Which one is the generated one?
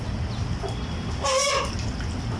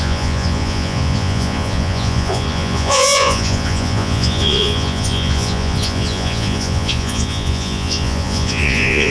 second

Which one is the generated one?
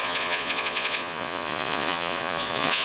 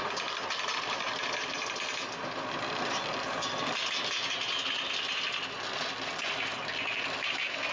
first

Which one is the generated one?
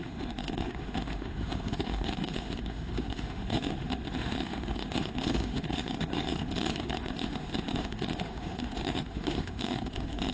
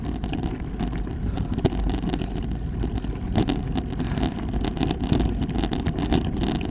first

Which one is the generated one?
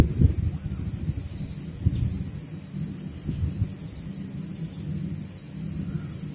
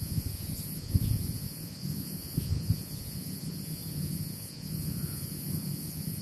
second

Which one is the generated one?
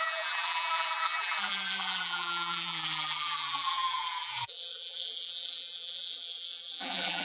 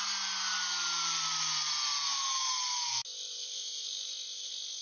first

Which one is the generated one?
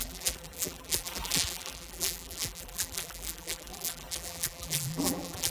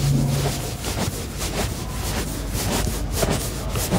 first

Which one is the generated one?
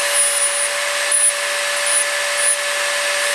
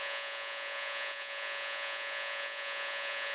second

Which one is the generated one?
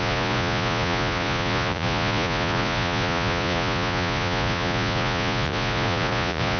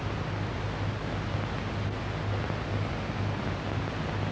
first